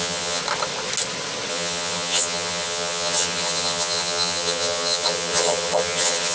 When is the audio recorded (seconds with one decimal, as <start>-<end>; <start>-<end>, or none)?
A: 0.4-1.5